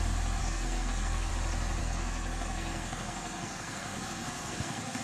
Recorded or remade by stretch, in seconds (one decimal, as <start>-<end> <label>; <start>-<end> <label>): 0.0-0.4 recorded; 0.4-1.3 remade; 1.3-1.8 recorded; 1.8-5.0 remade